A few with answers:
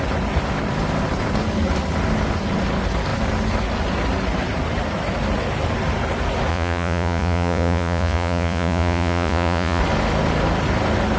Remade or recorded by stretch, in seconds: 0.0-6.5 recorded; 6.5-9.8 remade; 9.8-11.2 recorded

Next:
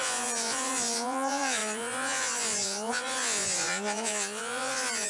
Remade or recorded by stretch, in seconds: 0.0-5.1 remade

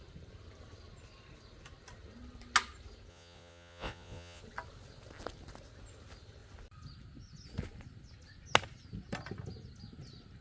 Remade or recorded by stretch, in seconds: 0.0-3.1 recorded; 3.1-4.4 remade; 4.4-10.4 recorded

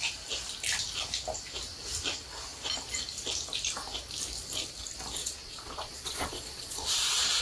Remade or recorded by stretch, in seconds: 0.0-5.2 recorded; 5.2-7.4 remade

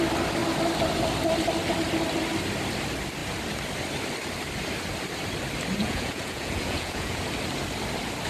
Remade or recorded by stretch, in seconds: 0.0-5.8 recorded; 5.8-7.2 remade; 7.2-8.3 recorded